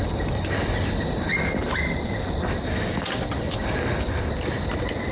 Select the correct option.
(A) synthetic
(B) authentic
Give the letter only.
B